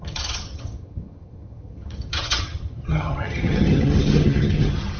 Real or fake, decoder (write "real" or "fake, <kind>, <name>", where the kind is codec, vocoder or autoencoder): fake, vocoder, HiFi-GAN